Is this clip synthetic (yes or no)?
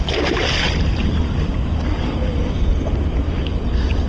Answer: no